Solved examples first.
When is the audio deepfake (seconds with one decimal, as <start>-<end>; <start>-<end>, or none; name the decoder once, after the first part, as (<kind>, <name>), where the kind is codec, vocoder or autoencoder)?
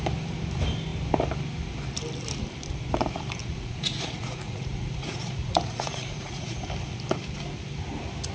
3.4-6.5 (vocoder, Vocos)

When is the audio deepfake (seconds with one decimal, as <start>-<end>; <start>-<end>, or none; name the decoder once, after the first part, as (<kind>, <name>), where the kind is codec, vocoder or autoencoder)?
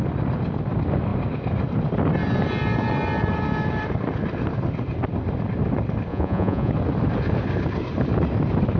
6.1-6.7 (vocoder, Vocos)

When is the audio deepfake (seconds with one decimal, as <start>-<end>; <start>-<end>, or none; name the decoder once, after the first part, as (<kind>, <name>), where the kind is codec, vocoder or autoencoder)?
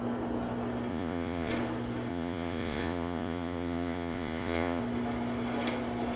0.9-1.5 (vocoder, Vocos); 2.1-4.8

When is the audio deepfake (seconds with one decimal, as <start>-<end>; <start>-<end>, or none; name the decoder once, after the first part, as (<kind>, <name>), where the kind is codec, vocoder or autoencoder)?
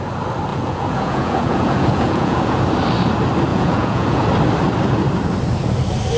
0.5-2.6 (vocoder, Vocos); 3.5-4.2